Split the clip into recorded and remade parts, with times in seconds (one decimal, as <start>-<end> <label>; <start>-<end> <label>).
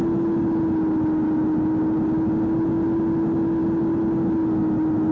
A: 0.0-5.1 recorded